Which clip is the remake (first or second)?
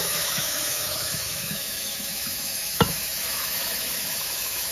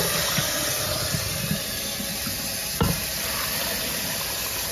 first